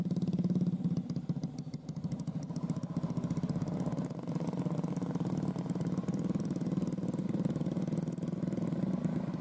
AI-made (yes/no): no